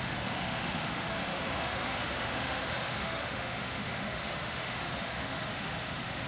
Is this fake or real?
fake